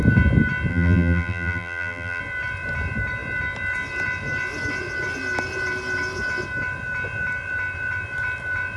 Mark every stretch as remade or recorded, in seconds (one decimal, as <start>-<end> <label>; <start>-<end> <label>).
0.0-0.7 recorded; 0.7-2.2 remade; 2.2-8.8 recorded